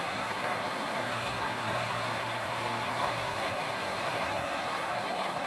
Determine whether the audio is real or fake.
fake